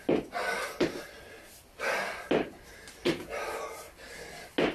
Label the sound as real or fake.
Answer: real